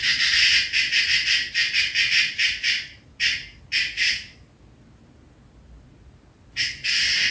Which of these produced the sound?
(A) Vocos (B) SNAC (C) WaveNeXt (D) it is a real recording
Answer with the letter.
D